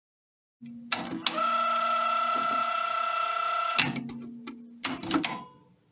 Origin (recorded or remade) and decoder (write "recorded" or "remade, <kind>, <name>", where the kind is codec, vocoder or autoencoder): recorded